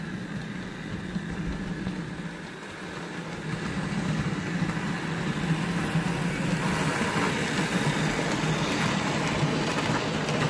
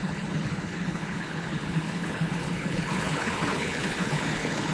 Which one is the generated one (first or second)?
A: second